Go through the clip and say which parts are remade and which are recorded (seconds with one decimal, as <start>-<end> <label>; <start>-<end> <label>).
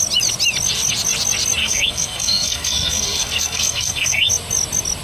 0.0-1.6 recorded; 1.6-4.3 remade; 4.3-5.0 recorded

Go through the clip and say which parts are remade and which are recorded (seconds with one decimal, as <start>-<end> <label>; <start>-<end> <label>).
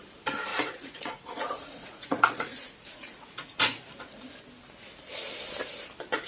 0.0-0.5 recorded; 0.5-3.9 remade; 3.9-6.3 recorded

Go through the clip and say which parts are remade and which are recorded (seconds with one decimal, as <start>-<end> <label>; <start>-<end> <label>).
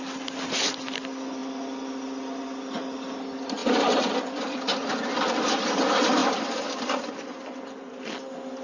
0.0-8.6 recorded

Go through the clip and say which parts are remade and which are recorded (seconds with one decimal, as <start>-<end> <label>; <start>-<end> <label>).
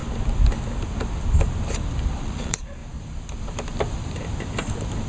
0.0-2.2 recorded; 2.2-2.8 remade; 2.8-5.1 recorded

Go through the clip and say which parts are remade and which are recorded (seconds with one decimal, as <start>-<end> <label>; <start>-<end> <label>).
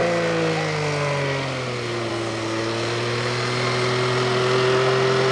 0.0-5.3 recorded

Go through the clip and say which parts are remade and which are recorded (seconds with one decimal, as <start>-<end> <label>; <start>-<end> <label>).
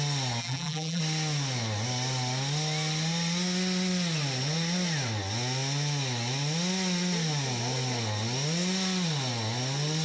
0.0-0.4 recorded; 0.4-1.0 remade; 1.0-10.0 recorded